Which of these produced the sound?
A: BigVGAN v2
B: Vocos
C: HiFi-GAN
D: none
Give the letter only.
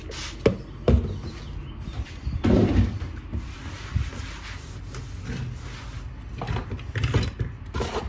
D